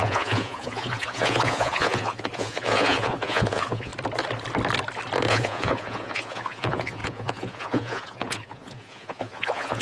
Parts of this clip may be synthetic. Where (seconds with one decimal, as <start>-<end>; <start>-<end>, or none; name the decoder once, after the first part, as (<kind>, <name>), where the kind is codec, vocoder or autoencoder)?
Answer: 0.0-3.9 (vocoder, Vocos); 5.3-9.8